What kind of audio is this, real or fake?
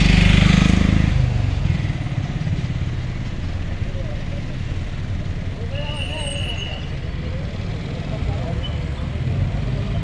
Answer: real